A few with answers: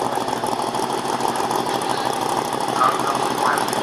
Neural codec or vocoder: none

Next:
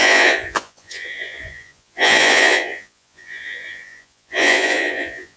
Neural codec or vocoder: vocoder, Vocos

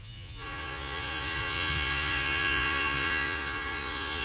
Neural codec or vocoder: vocoder, Vocos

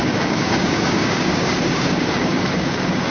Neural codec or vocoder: codec, DAC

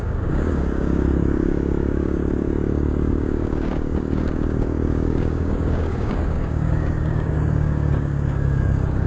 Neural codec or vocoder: codec, DAC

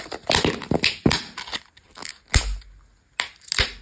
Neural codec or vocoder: none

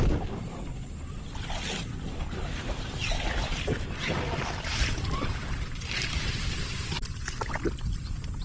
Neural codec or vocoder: vocoder, BigVGAN v2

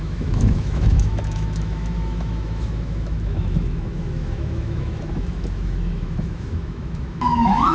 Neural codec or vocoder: autoencoder, DAC-VAE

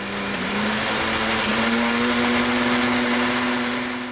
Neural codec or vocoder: none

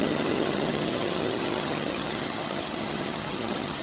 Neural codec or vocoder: vocoder, HiFi-GAN